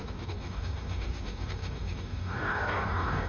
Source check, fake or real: fake